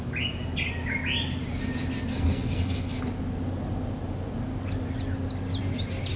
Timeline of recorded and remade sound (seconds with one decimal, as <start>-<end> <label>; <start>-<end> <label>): 0.0-2.1 recorded; 2.1-3.0 remade; 3.0-6.2 recorded